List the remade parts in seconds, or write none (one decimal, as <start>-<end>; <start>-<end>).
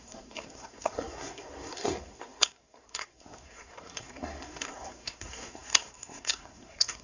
0.0-7.0